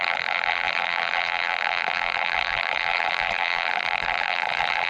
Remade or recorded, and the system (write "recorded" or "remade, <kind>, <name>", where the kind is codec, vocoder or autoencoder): remade, vocoder, BigVGAN v2